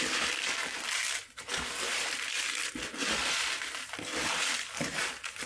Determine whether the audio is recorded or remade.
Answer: recorded